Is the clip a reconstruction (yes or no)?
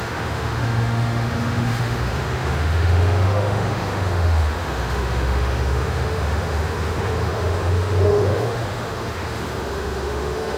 yes